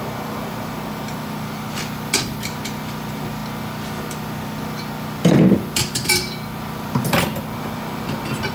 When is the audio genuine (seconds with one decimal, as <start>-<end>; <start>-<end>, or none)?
0.0-8.5